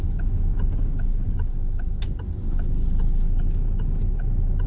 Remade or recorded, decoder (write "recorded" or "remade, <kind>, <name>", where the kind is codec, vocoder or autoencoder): recorded